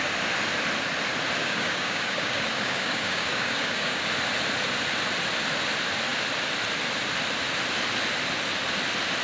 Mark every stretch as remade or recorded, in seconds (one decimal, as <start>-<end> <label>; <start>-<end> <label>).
0.0-1.4 recorded; 1.4-4.0 remade; 4.0-9.2 recorded